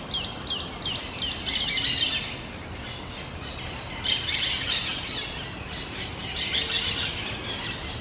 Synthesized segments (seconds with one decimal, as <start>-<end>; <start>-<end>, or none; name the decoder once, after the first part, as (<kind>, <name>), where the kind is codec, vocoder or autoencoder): none